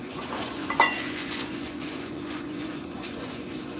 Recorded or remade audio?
remade